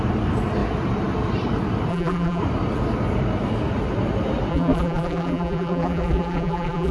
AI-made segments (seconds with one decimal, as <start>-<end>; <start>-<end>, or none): 1.9-2.4; 4.5-6.9